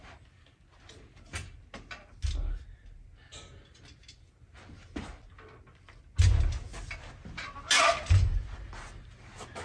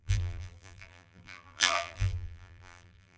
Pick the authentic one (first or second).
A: first